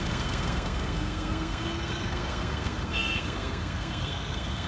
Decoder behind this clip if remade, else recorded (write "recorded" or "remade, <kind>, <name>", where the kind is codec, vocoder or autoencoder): remade, codec, SNAC